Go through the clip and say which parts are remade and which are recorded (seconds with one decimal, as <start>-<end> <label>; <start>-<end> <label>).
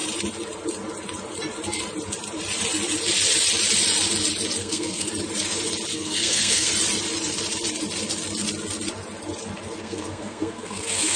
0.0-4.6 recorded; 4.6-5.1 remade; 5.1-5.9 recorded; 5.9-6.7 remade; 6.7-9.8 recorded; 9.8-11.2 remade